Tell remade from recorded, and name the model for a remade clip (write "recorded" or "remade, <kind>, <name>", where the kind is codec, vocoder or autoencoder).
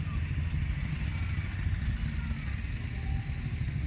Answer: recorded